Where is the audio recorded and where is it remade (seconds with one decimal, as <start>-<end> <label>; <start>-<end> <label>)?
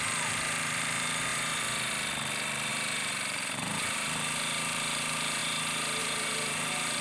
0.0-1.3 remade; 1.3-2.7 recorded; 2.7-5.4 remade; 5.4-6.0 recorded; 6.0-7.0 remade